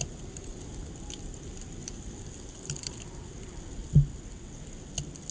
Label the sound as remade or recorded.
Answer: recorded